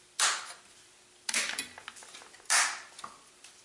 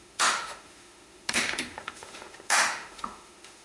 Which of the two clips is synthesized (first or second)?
second